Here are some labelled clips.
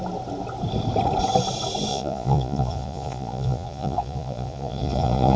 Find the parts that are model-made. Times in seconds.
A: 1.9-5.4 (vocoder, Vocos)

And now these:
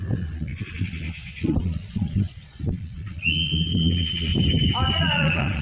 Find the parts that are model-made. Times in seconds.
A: 0.0-4.3 (vocoder, Vocos); 4.9-5.6

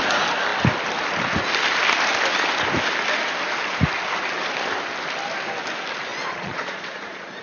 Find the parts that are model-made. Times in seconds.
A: 6.1-7.4 (vocoder, Vocos)

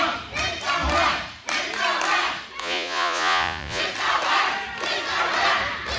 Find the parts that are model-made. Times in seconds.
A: 2.6-3.8 (vocoder, Vocos)

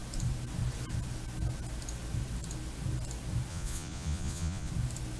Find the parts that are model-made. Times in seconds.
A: 3.5-4.7 (vocoder, Vocos)

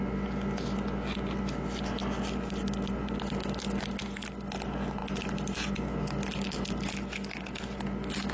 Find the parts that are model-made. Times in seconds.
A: none